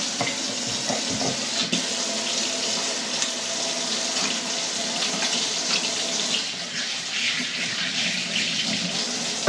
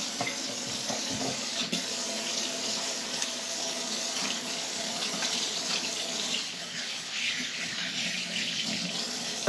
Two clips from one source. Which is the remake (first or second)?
second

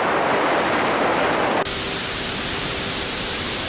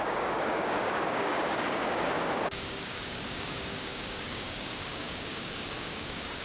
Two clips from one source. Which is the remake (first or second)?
second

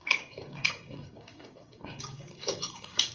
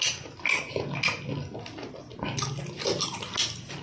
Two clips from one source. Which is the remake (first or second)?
first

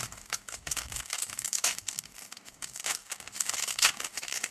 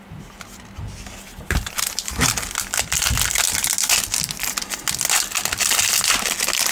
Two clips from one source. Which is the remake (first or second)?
first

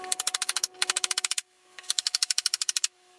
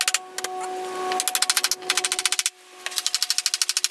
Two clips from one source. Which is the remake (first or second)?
first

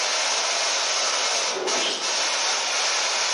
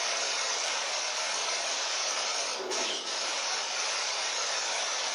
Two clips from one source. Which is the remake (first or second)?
second